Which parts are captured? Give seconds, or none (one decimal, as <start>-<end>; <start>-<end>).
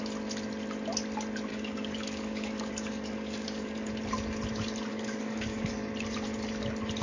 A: 0.0-1.5; 3.9-4.9; 5.7-7.0